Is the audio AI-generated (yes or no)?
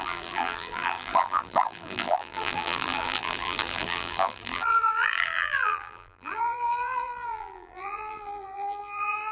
yes